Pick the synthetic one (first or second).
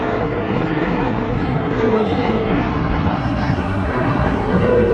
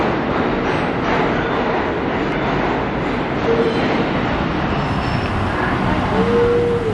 first